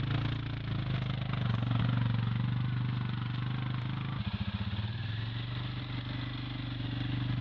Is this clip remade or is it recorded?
recorded